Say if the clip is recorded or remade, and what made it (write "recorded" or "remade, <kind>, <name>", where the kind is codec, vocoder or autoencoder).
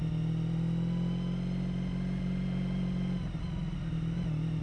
recorded